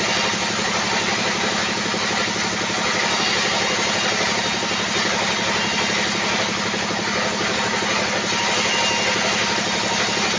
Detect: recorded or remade recorded